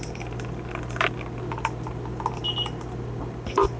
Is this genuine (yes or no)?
yes